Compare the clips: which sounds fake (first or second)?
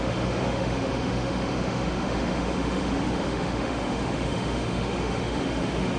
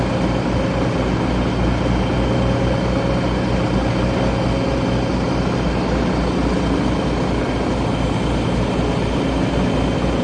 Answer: first